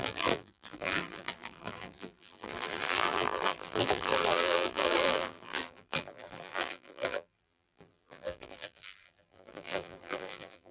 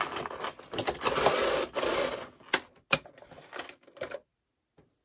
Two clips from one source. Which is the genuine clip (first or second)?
second